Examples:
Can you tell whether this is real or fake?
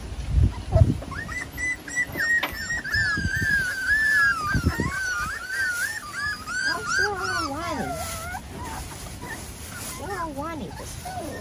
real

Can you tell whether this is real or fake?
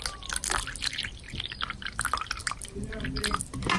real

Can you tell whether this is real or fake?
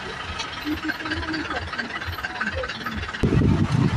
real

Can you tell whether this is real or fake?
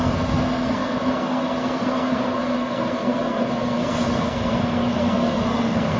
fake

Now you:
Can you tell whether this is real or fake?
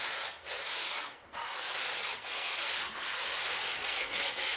fake